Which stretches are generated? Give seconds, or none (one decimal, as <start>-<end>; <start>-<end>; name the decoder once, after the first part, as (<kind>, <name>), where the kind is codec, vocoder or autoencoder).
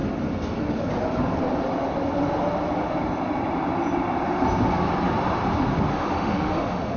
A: 5.9-7.0 (autoencoder, DAC-VAE)